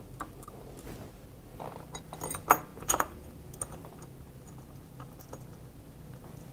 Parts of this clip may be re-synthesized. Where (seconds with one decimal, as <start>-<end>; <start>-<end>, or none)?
2.7-3.3